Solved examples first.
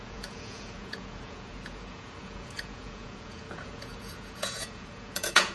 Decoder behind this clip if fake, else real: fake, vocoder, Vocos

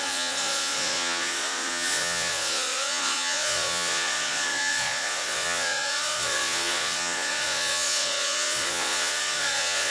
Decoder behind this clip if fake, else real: fake, vocoder, Vocos